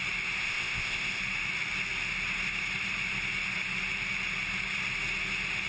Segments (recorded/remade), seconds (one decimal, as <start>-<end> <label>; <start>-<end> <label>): 0.0-0.4 recorded; 0.4-1.2 remade; 1.2-5.7 recorded

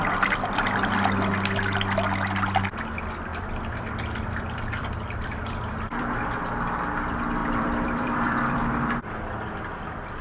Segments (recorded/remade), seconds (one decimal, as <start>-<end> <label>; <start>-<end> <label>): 0.0-3.3 recorded; 3.3-6.1 remade; 6.1-7.4 recorded; 7.4-9.1 remade; 9.1-10.2 recorded

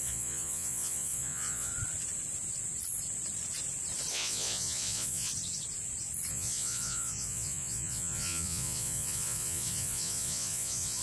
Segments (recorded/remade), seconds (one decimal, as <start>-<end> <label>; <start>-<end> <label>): 0.0-1.7 remade; 1.7-4.1 recorded; 4.1-5.3 remade; 5.3-6.3 recorded; 6.3-11.0 remade

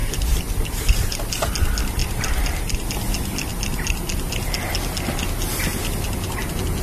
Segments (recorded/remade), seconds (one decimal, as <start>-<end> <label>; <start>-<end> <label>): 0.0-1.2 remade; 1.2-2.0 recorded; 2.0-2.9 remade; 2.9-6.8 recorded

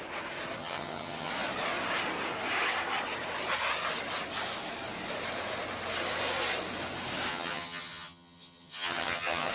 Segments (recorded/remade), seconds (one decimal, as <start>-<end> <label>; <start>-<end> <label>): 0.0-0.6 recorded; 0.6-1.3 remade; 1.3-7.3 recorded; 7.3-9.5 remade